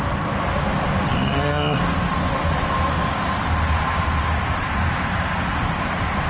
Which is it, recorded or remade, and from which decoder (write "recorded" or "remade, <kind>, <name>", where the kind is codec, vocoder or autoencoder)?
recorded